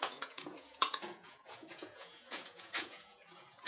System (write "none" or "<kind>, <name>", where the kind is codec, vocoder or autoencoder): vocoder, Vocos